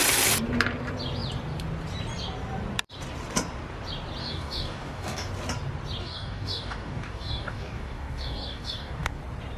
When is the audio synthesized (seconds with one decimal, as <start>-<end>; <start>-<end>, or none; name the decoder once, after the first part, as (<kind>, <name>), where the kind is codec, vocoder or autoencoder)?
4.2-5.3 (codec, DAC); 6.0-9.2